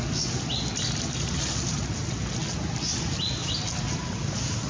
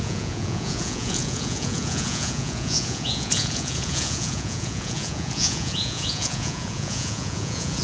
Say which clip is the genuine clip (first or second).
first